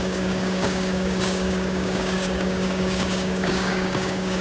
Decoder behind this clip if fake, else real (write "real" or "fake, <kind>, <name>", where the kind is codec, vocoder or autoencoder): fake, codec, DAC